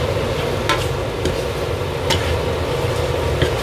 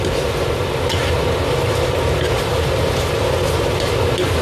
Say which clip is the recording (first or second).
first